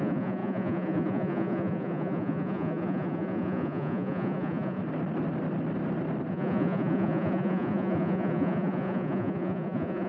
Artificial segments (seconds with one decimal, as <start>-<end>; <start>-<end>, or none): 0.0-4.8; 6.3-10.1